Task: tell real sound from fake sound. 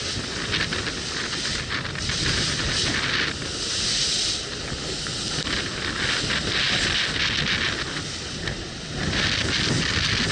real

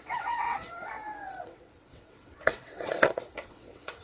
fake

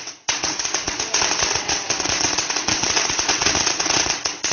fake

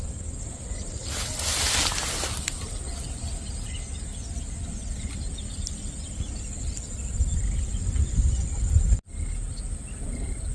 real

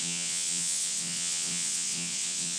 fake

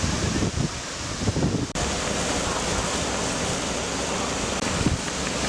real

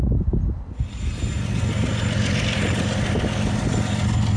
real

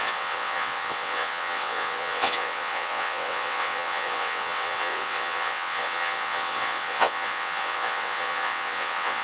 fake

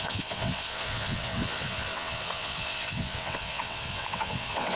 fake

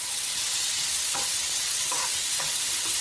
fake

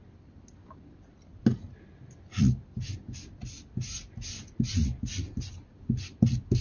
real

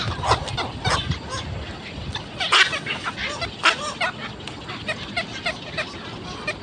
real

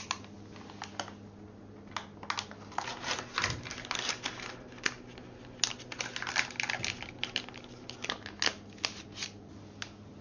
real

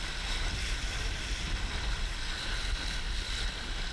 real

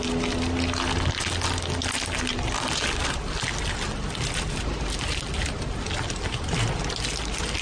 real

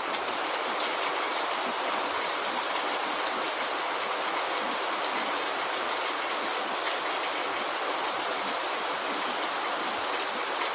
real